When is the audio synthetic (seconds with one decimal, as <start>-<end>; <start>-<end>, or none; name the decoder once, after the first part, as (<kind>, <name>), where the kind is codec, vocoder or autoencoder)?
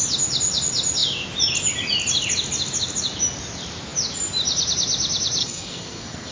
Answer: 5.4-6.3 (codec, SNAC)